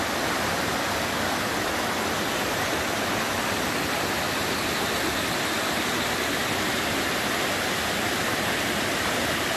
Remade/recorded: recorded